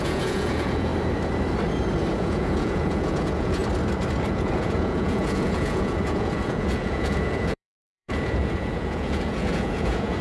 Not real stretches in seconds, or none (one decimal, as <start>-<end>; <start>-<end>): 0.0-0.9; 2.1-3.6; 4.3-10.2